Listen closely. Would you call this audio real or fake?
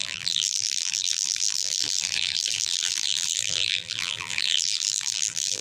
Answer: fake